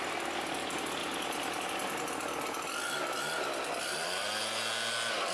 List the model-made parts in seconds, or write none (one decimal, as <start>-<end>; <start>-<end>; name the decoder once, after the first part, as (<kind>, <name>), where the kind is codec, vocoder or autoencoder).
none